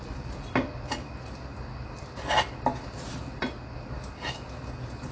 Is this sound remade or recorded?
recorded